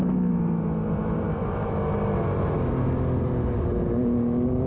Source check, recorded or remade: recorded